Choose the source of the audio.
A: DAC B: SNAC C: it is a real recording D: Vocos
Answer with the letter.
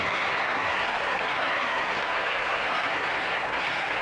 B